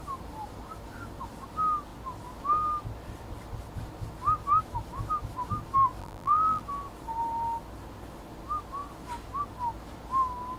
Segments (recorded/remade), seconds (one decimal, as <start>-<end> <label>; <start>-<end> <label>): 0.0-6.0 recorded; 6.0-6.6 remade; 6.6-10.6 recorded

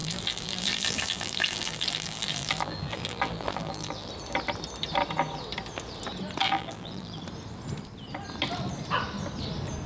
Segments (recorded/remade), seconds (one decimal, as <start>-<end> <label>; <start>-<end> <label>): 0.0-4.1 remade; 4.1-6.4 recorded; 6.4-7.2 remade; 7.2-9.9 recorded

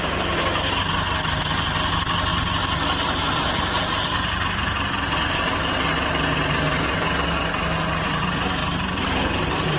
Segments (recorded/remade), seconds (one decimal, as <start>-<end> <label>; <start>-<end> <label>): 0.0-2.3 recorded; 2.3-5.7 remade; 5.7-8.6 recorded; 8.6-9.8 remade

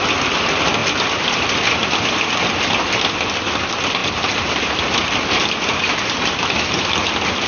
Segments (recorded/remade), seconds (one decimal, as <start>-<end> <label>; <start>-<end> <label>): 0.0-4.0 recorded; 4.0-4.6 remade; 4.6-7.5 recorded